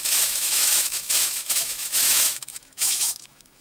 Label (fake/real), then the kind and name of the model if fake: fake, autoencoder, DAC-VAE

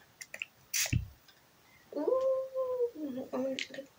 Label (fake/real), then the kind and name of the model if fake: real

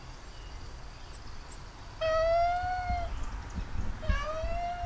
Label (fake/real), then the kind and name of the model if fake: real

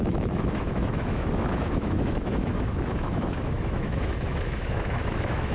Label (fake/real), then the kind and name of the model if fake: fake, autoencoder, DAC-VAE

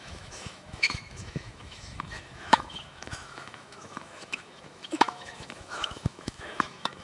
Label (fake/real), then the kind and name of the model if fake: fake, autoencoder, DAC-VAE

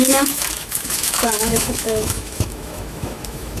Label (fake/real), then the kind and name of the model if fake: fake, autoencoder, DAC-VAE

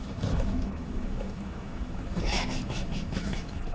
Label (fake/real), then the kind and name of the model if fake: fake, autoencoder, DAC-VAE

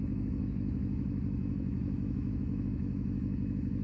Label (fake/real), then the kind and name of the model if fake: fake, autoencoder, DAC-VAE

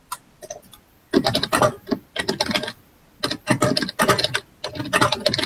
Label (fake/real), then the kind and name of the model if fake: real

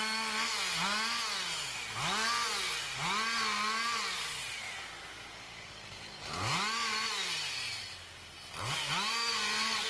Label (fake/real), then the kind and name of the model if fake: real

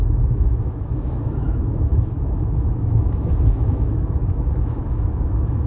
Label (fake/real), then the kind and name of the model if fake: fake, autoencoder, DAC-VAE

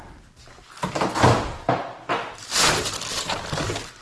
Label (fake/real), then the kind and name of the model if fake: real